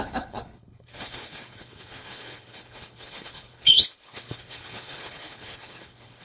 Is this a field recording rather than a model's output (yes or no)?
no